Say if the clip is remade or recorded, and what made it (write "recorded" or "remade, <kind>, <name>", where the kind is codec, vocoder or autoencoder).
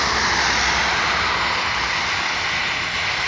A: recorded